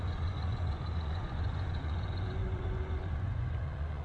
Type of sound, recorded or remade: remade